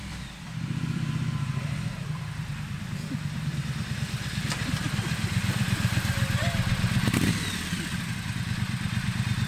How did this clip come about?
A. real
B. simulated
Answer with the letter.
B